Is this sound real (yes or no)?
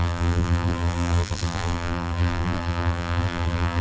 no